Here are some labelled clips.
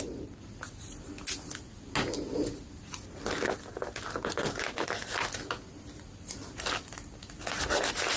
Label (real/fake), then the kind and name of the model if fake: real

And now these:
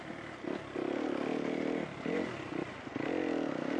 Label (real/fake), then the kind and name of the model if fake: real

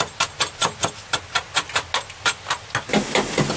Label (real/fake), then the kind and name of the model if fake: real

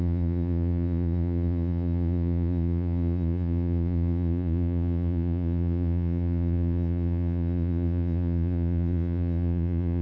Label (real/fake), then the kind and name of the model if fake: fake, vocoder, Vocos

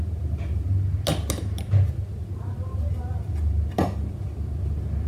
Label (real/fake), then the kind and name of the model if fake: real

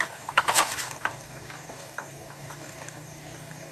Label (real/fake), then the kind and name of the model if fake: fake, codec, DAC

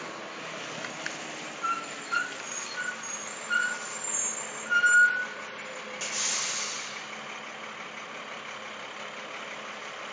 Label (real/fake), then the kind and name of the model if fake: real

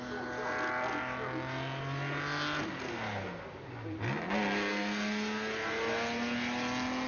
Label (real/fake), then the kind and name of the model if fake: real